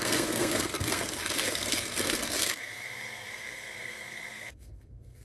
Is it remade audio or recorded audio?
remade